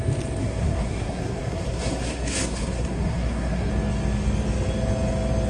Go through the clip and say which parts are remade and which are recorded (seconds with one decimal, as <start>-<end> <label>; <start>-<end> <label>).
0.0-0.4 recorded; 0.4-3.7 remade; 3.7-5.5 recorded